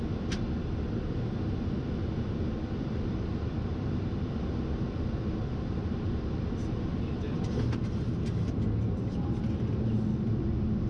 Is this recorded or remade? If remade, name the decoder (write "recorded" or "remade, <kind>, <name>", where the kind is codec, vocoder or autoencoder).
recorded